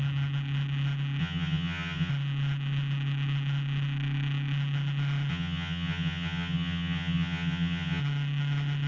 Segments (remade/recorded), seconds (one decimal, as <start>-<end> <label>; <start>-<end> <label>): 0.0-1.2 recorded; 1.2-2.1 remade; 2.1-5.3 recorded; 5.3-8.0 remade; 8.0-8.9 recorded